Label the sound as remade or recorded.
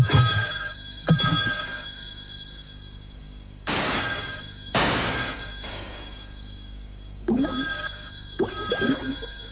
remade